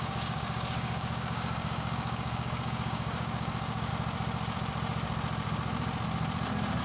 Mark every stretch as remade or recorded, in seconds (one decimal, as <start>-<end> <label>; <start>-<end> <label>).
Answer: 0.0-3.9 remade; 3.9-6.8 recorded